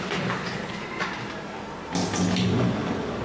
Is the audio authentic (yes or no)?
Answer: yes